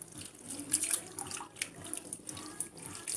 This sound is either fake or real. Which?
real